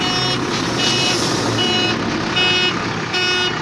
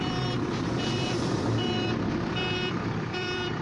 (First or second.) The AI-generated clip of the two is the second